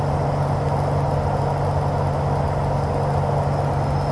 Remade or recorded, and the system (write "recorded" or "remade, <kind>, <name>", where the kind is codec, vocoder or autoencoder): recorded